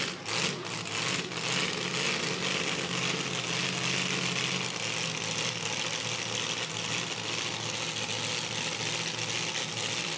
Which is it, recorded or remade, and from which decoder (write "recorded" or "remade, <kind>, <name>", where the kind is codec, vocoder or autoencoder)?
recorded